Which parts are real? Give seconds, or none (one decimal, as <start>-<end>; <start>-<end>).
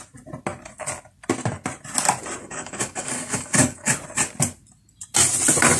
0.0-2.4; 3.9-5.8